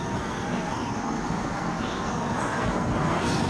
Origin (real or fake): fake